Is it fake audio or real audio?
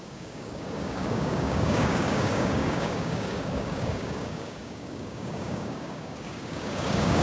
fake